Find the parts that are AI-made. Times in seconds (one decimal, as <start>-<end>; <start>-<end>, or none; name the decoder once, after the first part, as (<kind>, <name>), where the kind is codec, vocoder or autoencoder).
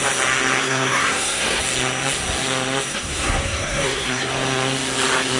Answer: 0.6-1.6 (codec, SNAC); 2.9-4.3